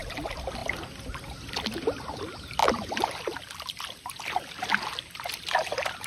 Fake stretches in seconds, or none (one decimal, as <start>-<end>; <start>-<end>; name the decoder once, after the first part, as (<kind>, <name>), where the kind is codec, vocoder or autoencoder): none